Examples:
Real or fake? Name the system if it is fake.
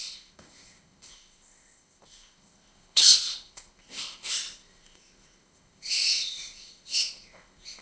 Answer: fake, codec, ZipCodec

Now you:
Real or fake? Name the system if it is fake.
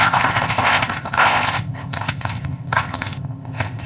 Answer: fake, codec, ZipCodec